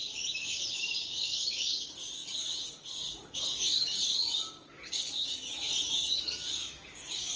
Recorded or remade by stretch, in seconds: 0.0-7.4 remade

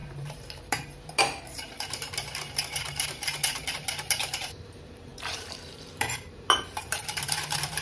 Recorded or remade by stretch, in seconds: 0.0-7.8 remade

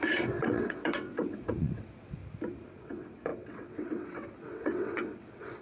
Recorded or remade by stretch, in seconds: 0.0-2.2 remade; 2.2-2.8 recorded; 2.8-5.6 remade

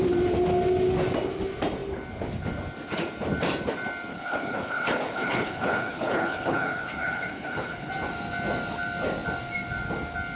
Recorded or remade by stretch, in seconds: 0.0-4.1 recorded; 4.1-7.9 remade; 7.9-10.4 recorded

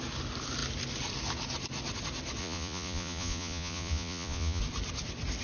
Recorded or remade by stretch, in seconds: 0.0-2.4 recorded; 2.4-4.6 remade; 4.6-5.4 recorded